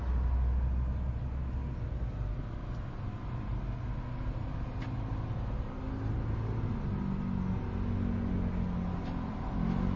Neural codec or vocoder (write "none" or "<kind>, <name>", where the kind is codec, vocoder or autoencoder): none